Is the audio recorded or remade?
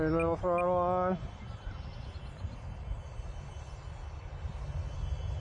recorded